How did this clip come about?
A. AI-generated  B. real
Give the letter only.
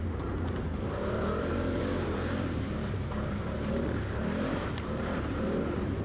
A